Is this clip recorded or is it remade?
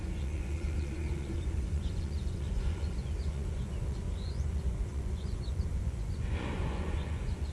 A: remade